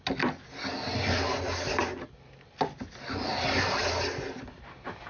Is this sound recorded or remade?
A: recorded